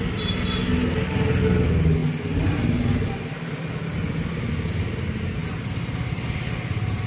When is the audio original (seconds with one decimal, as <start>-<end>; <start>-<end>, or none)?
0.0-7.1